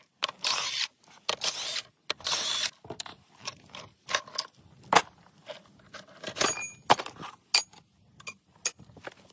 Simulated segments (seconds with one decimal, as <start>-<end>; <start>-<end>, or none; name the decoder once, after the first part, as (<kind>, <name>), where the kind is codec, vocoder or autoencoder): 3.1-4.1 (vocoder, BigVGAN v2)